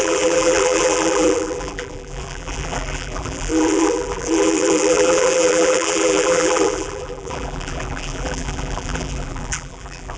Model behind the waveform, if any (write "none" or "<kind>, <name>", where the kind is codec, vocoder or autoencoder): vocoder, BigVGAN v2